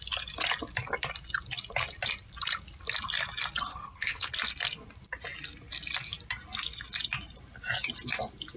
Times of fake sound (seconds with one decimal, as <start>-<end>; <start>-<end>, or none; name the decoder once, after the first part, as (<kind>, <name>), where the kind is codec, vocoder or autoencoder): 3.7-4.3 (codec, HILCodec)

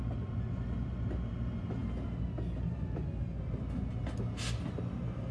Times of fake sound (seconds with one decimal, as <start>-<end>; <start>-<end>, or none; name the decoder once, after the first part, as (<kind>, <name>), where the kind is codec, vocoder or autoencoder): none

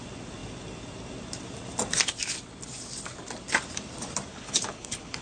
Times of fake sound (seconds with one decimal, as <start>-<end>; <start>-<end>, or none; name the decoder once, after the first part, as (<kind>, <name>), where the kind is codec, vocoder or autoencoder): 4.3-5.2 (codec, HILCodec)

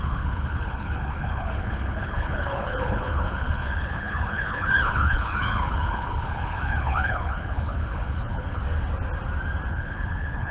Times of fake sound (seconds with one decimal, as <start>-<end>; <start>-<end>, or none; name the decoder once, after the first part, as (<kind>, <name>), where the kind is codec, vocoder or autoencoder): 0.0-8.6 (codec, HILCodec); 9.7-10.5

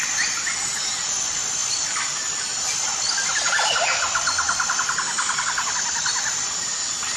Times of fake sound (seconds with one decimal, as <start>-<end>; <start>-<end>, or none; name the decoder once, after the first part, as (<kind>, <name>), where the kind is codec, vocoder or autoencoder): none

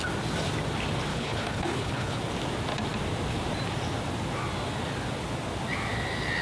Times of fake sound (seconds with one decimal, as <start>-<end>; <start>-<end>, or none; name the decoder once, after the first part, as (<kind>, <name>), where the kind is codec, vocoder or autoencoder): 1.1-2.2 (codec, HILCodec)